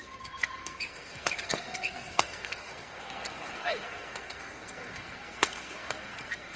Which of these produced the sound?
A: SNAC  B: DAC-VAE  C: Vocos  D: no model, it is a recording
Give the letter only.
A